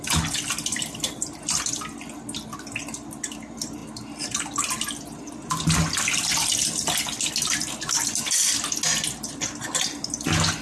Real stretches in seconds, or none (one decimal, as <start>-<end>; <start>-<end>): 0.0-10.6